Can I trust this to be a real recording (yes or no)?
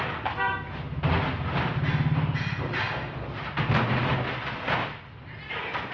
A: yes